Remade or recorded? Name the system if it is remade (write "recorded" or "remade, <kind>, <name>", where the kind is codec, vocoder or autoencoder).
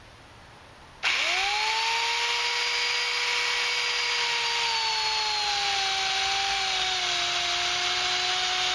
recorded